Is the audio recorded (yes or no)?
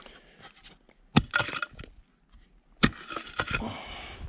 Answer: yes